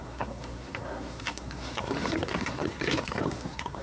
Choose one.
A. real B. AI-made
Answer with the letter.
B